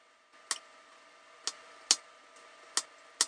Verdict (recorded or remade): recorded